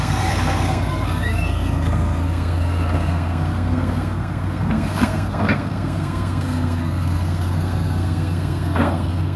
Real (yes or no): no